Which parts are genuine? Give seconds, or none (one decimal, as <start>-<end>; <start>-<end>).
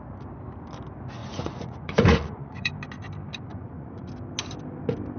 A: 0.0-1.2; 2.7-3.5; 4.1-5.2